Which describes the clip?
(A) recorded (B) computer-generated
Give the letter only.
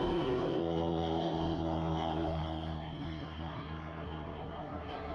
B